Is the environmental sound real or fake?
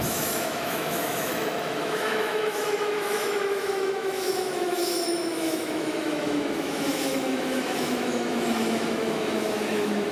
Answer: fake